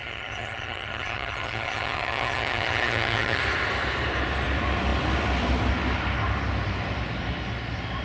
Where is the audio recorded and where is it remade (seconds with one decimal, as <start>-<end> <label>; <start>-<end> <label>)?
0.0-3.4 remade; 3.4-8.0 recorded